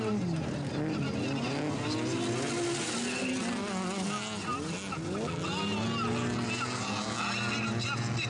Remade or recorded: recorded